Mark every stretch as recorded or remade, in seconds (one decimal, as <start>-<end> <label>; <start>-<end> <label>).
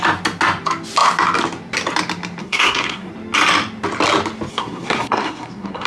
0.0-2.4 recorded; 2.4-3.1 remade; 3.1-4.5 recorded; 4.5-5.9 remade